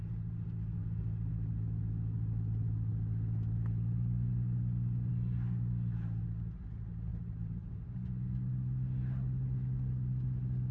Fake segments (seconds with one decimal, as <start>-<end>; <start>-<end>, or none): 7.1-7.9